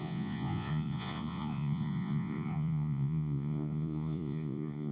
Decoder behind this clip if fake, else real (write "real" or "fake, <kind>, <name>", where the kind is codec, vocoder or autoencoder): fake, vocoder, Vocos